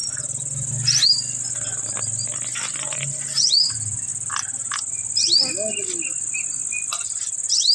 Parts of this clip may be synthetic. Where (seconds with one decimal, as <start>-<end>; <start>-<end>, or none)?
none